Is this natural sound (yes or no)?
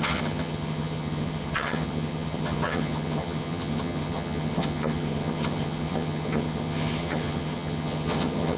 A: no